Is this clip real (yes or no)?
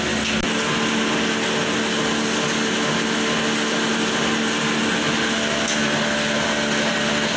yes